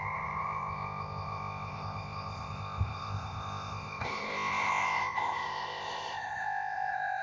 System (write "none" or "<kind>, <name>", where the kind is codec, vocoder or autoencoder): codec, ZipCodec